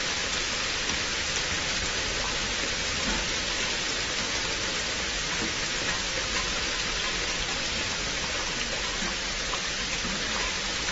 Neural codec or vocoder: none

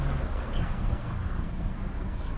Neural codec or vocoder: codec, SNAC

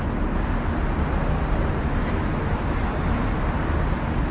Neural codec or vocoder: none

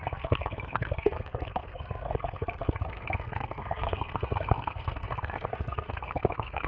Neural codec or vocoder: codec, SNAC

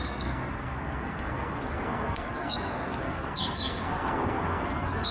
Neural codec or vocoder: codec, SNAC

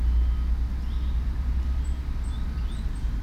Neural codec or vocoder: none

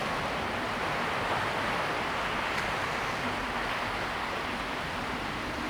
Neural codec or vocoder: none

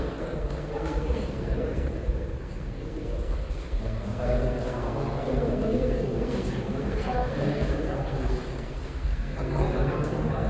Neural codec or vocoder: codec, SNAC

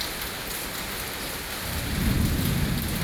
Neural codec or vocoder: none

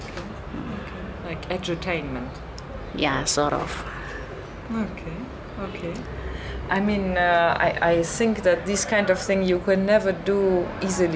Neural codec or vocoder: none